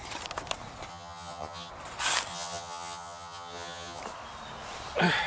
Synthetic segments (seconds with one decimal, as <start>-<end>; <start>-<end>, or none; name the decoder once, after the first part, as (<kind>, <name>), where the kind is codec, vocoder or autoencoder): 0.9-1.7 (vocoder, HiFi-GAN); 2.3-4.0